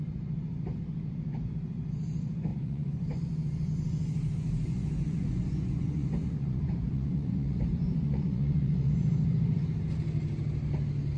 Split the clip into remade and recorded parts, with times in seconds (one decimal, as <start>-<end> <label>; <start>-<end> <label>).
0.0-2.5 recorded; 2.5-3.7 remade; 3.7-4.7 recorded; 4.7-8.9 remade; 8.9-11.2 recorded

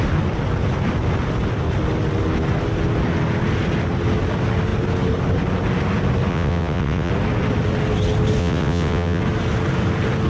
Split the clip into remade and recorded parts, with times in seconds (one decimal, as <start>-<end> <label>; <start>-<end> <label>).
0.0-6.3 recorded; 6.3-7.1 remade; 7.1-8.4 recorded; 8.4-9.2 remade; 9.2-10.3 recorded

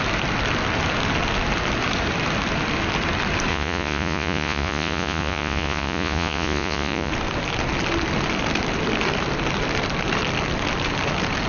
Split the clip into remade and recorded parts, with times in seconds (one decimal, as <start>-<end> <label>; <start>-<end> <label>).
0.0-3.5 recorded; 3.5-7.1 remade; 7.1-11.5 recorded